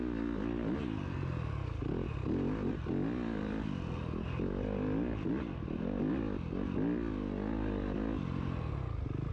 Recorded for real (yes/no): yes